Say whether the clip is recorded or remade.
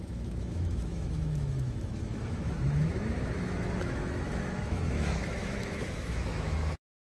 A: remade